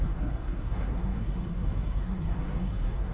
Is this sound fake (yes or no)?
yes